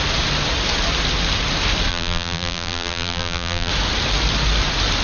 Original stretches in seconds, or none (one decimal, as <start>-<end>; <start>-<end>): 0.0-1.9; 3.7-5.0